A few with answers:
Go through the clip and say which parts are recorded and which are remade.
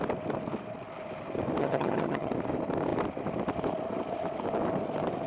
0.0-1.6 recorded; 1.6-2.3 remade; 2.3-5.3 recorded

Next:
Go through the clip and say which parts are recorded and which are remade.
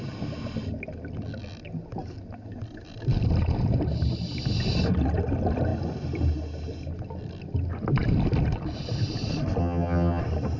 0.0-9.6 recorded; 9.6-10.2 remade; 10.2-10.6 recorded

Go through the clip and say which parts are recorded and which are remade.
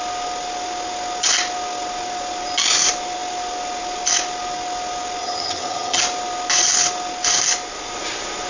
0.0-5.2 recorded; 5.2-6.0 remade; 6.0-8.5 recorded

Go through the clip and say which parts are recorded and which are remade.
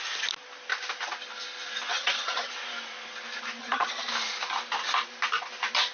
0.0-1.9 recorded; 1.9-2.5 remade; 2.5-3.6 recorded; 3.6-4.1 remade; 4.1-5.9 recorded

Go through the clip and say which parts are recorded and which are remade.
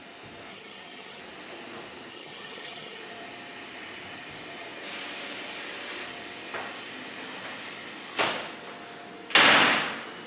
0.0-0.5 recorded; 0.5-1.2 remade; 1.2-2.1 recorded; 2.1-3.0 remade; 3.0-10.3 recorded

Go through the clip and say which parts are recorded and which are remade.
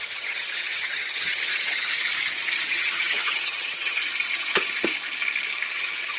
0.0-1.9 remade; 1.9-2.7 recorded; 2.7-4.0 remade; 4.0-5.7 recorded; 5.7-6.2 remade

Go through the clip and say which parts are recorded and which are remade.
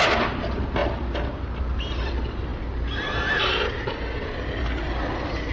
0.0-5.5 recorded